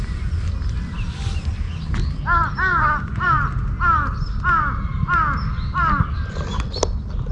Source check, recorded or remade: recorded